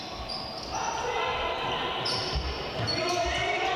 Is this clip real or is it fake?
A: real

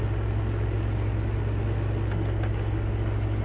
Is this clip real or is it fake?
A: real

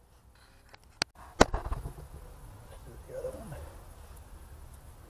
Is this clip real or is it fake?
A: real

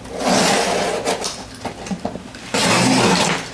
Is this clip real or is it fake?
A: real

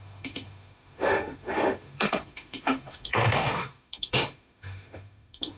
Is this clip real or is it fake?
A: fake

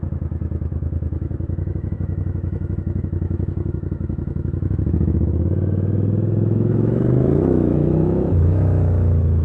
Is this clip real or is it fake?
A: fake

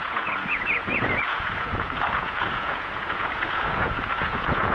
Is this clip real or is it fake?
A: fake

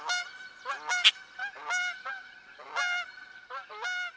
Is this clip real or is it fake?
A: real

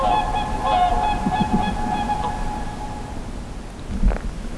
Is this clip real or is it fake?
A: real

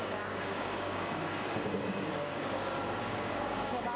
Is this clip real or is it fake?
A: fake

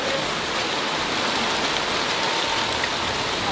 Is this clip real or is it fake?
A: real